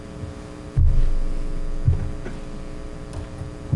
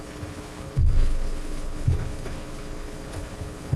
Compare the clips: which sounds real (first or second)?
first